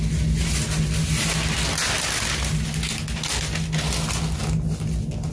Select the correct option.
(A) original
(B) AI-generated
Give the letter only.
A